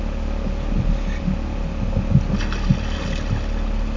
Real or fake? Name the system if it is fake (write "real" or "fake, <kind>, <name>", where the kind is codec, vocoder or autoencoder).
real